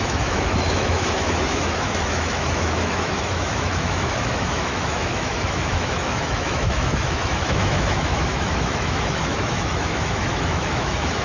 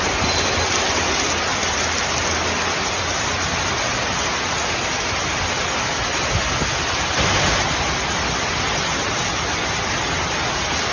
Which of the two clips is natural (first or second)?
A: second